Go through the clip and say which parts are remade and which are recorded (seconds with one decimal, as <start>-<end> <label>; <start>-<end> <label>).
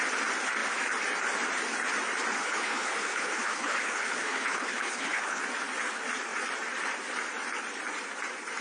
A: 0.0-2.4 recorded; 2.4-5.4 remade; 5.4-8.6 recorded